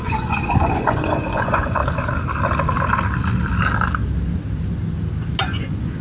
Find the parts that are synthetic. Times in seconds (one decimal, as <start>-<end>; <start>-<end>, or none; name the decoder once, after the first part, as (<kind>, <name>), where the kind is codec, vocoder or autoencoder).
0.0-1.8 (vocoder, Vocos); 5.4-6.0